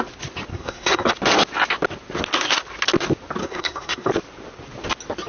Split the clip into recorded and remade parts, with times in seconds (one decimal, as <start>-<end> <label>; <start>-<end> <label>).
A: 0.0-0.5 recorded; 0.5-1.1 remade; 1.1-3.4 recorded; 3.4-4.1 remade; 4.1-5.3 recorded